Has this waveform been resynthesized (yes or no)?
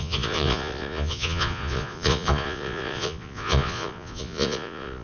yes